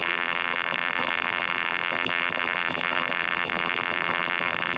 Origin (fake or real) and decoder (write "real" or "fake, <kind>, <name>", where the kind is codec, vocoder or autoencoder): fake, vocoder, BigVGAN v2